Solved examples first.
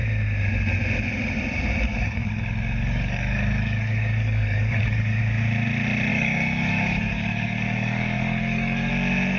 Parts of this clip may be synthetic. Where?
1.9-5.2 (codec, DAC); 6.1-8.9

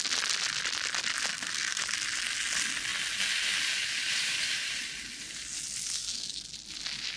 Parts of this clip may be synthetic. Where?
1.3-1.8 (codec, SNAC); 6.0-6.5